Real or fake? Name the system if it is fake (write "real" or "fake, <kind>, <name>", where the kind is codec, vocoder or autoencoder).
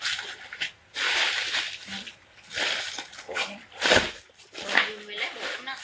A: real